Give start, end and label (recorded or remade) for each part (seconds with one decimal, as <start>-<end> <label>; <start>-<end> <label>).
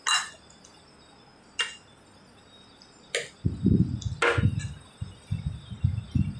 0.0-6.4 recorded